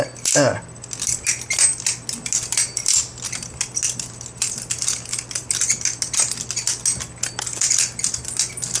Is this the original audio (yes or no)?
yes